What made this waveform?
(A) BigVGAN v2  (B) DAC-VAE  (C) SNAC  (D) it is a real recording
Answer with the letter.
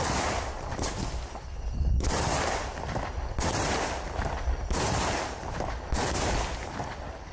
D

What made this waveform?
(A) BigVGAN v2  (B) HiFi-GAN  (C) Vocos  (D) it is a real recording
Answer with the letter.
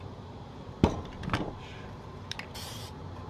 A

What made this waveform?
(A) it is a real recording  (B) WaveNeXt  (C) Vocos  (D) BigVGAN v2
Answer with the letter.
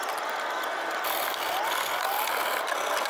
A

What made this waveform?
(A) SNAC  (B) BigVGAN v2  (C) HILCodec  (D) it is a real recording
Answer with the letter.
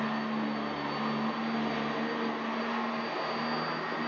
D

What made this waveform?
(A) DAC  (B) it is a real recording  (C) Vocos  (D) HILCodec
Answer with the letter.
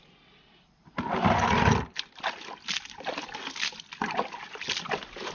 B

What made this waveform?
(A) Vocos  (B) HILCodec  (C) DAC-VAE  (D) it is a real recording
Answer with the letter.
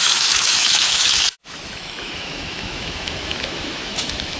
C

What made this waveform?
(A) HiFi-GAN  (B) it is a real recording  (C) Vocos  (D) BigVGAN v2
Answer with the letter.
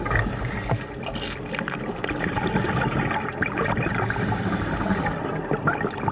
B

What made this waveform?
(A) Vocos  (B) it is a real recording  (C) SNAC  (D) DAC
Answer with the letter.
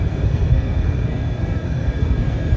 C